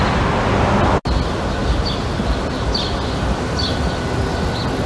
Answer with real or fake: real